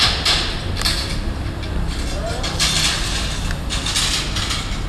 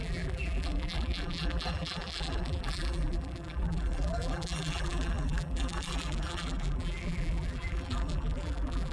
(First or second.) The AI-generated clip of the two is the second